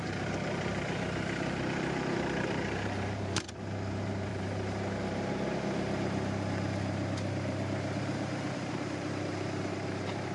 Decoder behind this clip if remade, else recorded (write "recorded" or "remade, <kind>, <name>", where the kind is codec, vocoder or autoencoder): remade, vocoder, BigVGAN v2